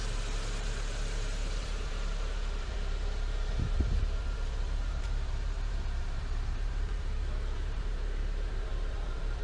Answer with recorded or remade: remade